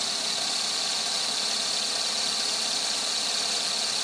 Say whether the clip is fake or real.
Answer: real